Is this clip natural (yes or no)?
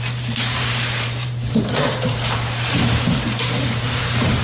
no